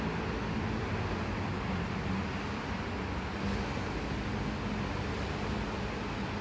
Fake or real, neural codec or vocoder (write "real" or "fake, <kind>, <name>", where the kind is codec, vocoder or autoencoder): real